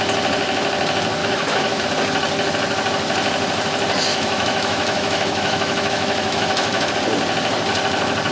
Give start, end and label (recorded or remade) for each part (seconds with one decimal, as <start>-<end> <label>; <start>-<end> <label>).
0.0-1.2 recorded; 1.2-1.8 remade; 1.8-4.1 recorded; 4.1-6.9 remade; 6.9-8.3 recorded